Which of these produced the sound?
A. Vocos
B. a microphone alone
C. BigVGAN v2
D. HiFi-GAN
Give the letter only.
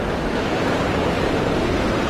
C